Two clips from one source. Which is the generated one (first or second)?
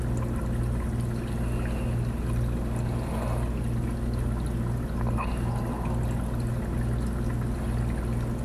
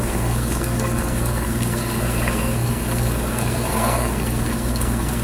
second